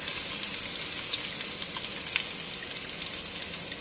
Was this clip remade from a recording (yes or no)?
no